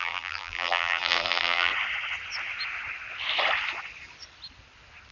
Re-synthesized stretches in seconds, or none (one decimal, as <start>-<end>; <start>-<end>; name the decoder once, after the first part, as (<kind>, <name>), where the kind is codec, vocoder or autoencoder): 0.0-1.7 (vocoder, BigVGAN v2)